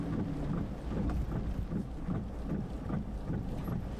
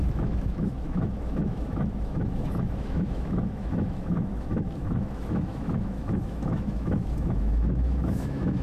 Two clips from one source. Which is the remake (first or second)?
second